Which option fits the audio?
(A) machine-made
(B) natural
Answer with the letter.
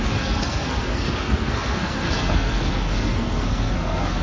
A